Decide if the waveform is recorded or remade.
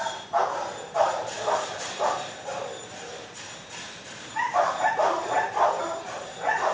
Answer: remade